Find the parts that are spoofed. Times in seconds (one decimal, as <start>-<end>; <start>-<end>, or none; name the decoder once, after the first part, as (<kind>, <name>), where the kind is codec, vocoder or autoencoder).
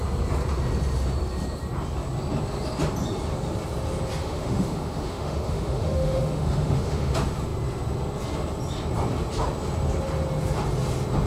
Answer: 4.2-7.1 (autoencoder, DAC-VAE)